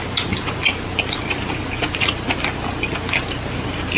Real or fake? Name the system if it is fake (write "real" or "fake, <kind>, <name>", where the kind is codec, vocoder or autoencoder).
real